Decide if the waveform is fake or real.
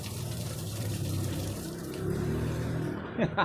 fake